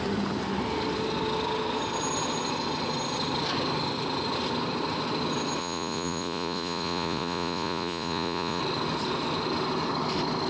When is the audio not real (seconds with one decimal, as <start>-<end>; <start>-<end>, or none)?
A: 5.6-8.6